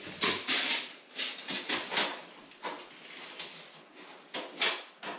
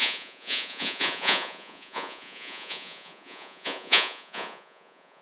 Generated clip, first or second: second